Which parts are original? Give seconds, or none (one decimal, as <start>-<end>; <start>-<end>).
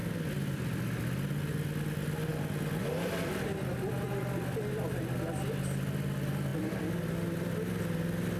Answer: 0.0-8.4